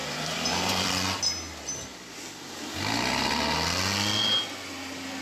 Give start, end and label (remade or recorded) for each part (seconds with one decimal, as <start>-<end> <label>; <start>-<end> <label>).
0.0-1.2 remade; 1.2-5.2 recorded